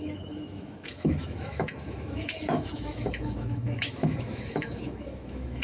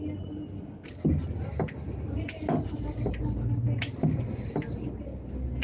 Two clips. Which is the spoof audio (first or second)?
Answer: first